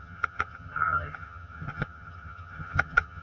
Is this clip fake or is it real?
fake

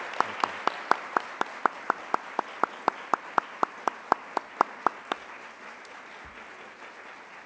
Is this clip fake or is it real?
real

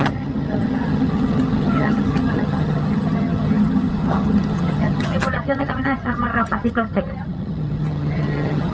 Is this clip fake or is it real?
fake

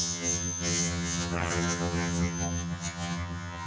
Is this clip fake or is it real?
fake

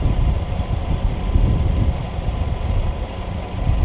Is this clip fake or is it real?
real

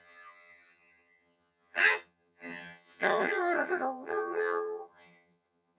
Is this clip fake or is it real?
fake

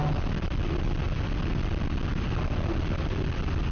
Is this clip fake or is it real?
real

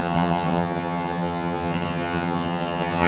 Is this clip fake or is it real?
fake